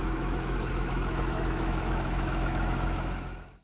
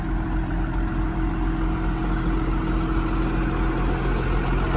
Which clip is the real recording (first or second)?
second